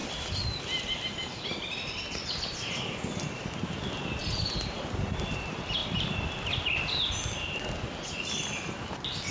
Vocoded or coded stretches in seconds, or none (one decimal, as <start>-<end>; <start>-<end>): 4.2-4.8